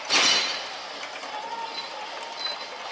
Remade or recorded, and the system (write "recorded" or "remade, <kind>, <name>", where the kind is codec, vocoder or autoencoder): recorded